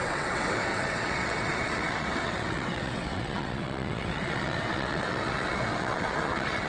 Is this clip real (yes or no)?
no